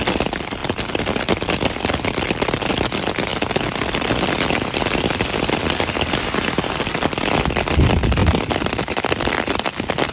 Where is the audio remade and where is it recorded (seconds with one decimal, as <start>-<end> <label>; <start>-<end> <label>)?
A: 0.0-10.1 recorded